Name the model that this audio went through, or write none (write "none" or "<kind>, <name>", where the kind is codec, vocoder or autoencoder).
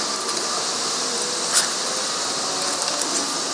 none